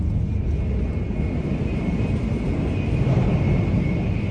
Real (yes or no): yes